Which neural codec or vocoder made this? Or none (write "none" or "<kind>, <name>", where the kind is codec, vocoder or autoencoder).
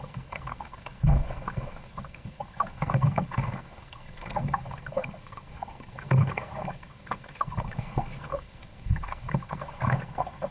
codec, SNAC